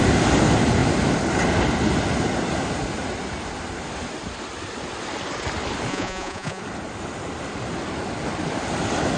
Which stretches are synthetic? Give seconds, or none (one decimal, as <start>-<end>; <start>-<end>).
5.9-6.6